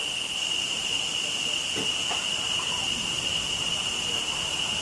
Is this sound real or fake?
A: real